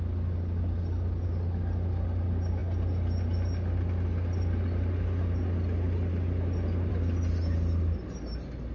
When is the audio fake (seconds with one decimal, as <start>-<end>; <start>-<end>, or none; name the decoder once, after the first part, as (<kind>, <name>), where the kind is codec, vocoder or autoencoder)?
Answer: none